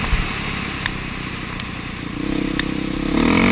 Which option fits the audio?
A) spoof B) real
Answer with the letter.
B